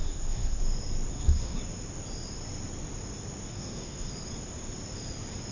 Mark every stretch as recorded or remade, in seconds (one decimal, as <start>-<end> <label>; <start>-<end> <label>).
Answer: 0.0-0.6 remade; 0.6-1.1 recorded; 1.1-1.6 remade; 1.6-3.5 recorded; 3.5-4.1 remade; 4.1-5.5 recorded